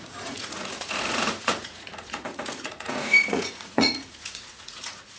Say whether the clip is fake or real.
fake